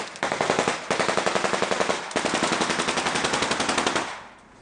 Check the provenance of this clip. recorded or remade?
recorded